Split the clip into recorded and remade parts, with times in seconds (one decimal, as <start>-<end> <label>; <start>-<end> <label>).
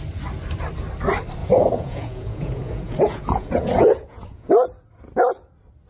0.0-1.4 recorded; 1.4-4.5 remade; 4.5-5.9 recorded